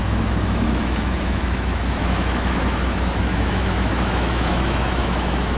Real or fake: fake